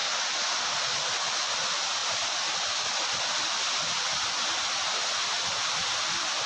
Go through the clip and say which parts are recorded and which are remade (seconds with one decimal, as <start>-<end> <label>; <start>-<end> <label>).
0.0-6.5 recorded